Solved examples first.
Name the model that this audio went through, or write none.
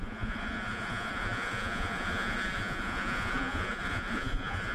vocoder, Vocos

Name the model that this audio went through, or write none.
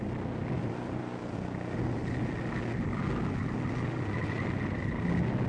none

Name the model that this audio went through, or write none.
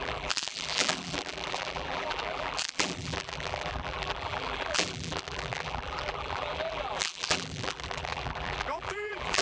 vocoder, BigVGAN v2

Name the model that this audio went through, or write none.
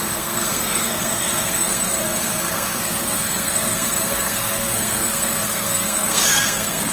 codec, SNAC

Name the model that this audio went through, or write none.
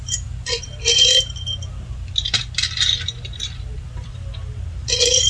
vocoder, BigVGAN v2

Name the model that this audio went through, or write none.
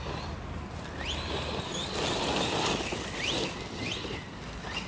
none